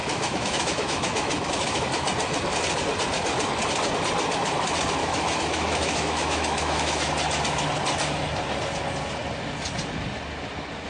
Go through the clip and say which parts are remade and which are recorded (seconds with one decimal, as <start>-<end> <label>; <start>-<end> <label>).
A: 0.0-1.8 remade; 1.8-5.0 recorded; 5.0-7.1 remade; 7.1-10.9 recorded